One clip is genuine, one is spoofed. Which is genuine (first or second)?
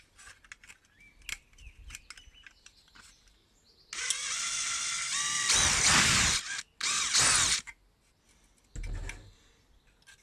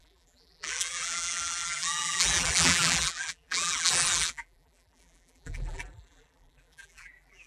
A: first